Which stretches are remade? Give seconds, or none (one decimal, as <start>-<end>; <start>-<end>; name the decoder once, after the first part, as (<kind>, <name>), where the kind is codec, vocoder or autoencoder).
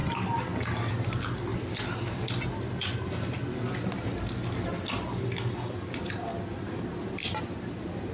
none